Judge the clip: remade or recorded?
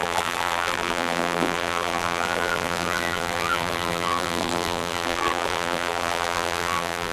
remade